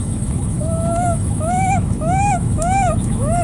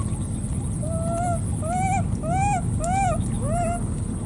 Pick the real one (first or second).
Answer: second